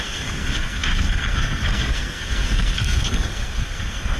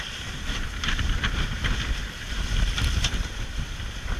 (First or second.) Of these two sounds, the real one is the second